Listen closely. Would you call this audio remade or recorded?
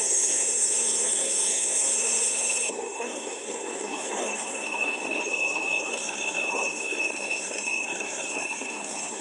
remade